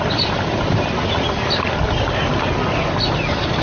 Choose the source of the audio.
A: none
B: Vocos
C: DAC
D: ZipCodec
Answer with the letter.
A